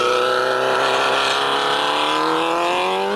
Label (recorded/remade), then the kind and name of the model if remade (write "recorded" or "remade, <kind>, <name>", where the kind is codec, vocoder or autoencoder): recorded